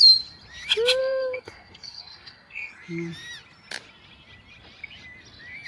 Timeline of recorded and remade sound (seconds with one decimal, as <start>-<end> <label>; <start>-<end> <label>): 0.0-1.0 recorded; 1.0-2.7 remade; 2.7-5.7 recorded